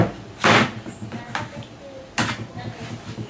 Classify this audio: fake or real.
real